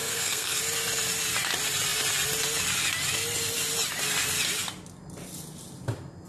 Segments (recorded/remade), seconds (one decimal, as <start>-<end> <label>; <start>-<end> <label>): 0.0-0.6 remade; 0.6-6.3 recorded